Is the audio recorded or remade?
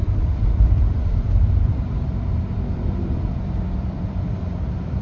remade